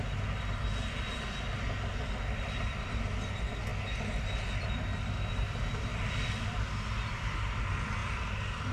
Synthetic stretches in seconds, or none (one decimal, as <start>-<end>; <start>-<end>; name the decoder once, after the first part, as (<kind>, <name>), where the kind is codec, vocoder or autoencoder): none